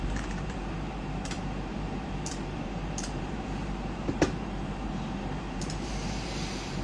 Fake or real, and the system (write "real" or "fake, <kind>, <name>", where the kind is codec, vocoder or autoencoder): fake, vocoder, BigVGAN v2